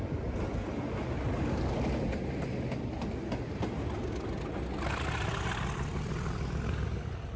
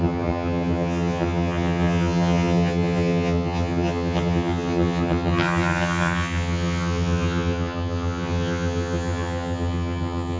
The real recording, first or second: first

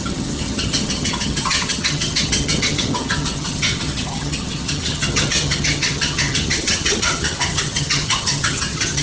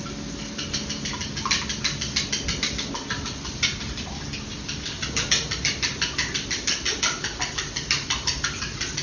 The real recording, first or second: second